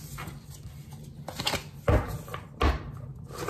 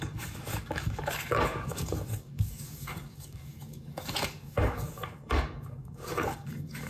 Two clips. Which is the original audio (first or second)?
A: first